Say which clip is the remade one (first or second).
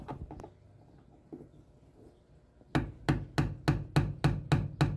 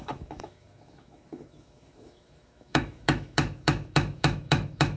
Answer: second